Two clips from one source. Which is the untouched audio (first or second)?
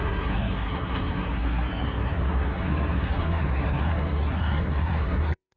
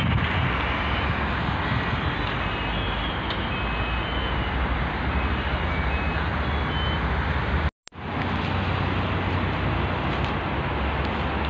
second